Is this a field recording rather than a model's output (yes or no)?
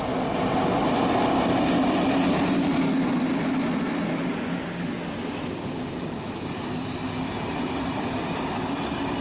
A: yes